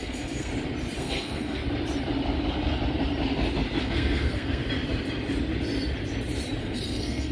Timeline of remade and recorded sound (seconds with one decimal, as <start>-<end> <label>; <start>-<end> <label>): 0.0-0.5 remade; 0.5-1.0 recorded; 1.0-1.6 remade; 1.6-3.8 recorded; 3.8-4.6 remade; 4.6-6.6 recorded; 6.6-7.3 remade

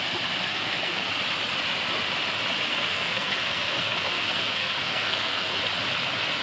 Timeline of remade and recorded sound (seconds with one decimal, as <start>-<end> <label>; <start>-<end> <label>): 0.0-0.5 recorded; 0.5-1.1 remade; 1.1-2.7 recorded; 2.7-5.6 remade; 5.6-6.4 recorded

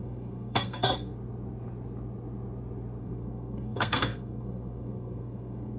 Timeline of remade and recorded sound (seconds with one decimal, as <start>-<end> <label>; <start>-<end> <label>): 0.0-1.1 remade; 1.1-3.0 recorded; 3.0-5.8 remade